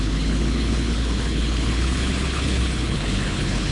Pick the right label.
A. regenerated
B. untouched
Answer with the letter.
A